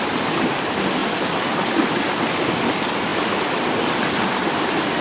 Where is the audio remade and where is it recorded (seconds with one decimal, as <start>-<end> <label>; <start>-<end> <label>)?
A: 0.0-5.0 recorded